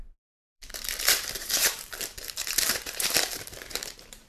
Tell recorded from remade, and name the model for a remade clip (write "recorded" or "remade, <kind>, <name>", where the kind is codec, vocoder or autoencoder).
remade, vocoder, BigVGAN v2